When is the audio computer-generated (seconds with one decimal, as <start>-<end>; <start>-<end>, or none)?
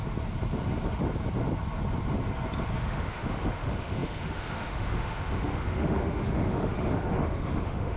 2.8-8.0